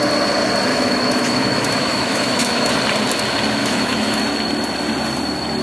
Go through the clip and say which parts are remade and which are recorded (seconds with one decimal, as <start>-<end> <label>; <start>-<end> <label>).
0.0-0.7 recorded; 0.7-2.7 remade; 2.7-3.6 recorded; 3.6-4.2 remade; 4.2-5.6 recorded